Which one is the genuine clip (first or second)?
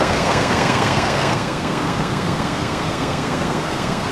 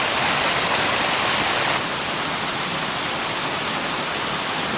second